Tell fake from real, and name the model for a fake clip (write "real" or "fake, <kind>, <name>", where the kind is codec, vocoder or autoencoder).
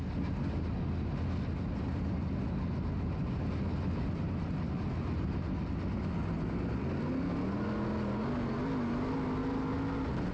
real